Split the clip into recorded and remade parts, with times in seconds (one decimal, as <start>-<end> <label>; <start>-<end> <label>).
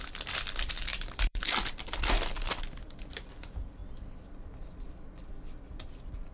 0.0-3.8 remade; 3.8-5.6 recorded; 5.6-6.3 remade